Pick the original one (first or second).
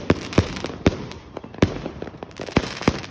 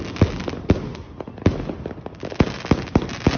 second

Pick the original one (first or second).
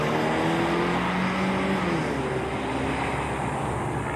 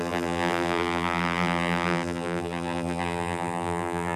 first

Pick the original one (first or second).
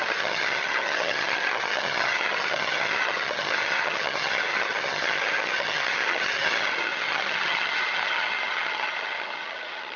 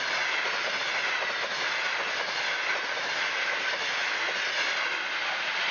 second